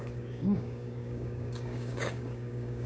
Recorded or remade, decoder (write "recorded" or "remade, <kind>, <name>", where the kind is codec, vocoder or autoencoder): remade, codec, DAC